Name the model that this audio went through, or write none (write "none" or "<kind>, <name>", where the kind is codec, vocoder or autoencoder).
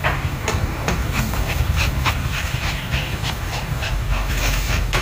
codec, DAC